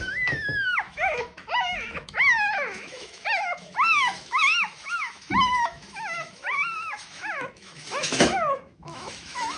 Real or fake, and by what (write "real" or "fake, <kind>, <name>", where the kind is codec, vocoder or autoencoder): fake, autoencoder, DAC-VAE